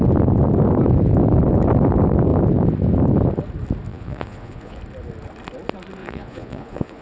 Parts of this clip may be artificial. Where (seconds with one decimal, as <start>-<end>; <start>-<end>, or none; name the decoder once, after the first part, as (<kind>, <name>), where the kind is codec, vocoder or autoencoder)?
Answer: 3.9-4.8 (vocoder, Vocos); 6.0-7.0